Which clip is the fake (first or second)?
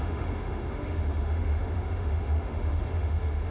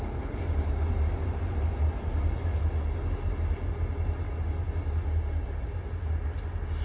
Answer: first